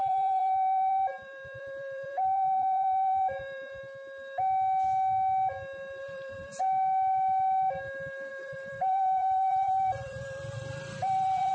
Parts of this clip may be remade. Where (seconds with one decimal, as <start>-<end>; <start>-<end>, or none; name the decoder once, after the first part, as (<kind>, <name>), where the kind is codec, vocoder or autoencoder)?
0.0-3.8 (vocoder, BigVGAN v2); 6.0-6.6; 8.3-11.5